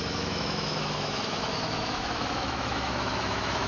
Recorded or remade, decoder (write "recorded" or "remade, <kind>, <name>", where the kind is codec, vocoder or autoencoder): remade, autoencoder, DAC-VAE